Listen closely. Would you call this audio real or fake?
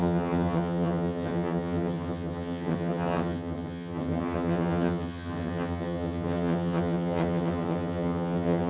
fake